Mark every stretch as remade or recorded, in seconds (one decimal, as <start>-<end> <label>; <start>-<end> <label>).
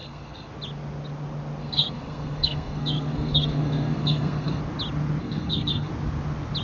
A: 0.0-0.5 remade; 0.5-1.6 recorded; 1.6-4.6 remade; 4.6-5.2 recorded; 5.2-5.9 remade; 5.9-6.6 recorded